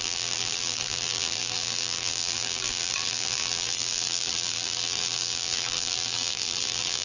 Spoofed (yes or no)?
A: yes